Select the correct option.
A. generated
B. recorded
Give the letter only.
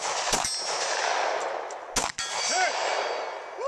B